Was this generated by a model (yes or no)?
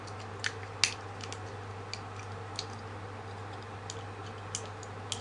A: no